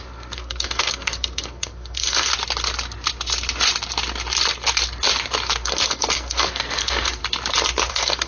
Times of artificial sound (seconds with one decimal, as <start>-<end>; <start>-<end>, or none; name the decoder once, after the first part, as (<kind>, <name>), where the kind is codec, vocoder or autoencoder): 0.0-2.3 (codec, SNAC); 5.6-7.2; 7.9-8.3